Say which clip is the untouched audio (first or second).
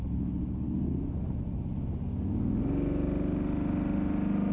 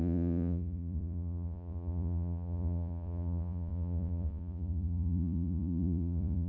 first